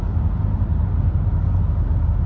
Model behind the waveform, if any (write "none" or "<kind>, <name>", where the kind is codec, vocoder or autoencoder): none